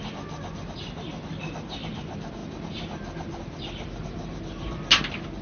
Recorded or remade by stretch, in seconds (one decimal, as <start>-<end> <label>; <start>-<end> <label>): 0.0-5.4 recorded